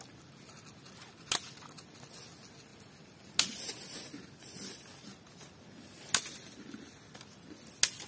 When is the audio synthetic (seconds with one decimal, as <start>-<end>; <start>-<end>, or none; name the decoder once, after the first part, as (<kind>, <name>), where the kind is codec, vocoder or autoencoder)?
none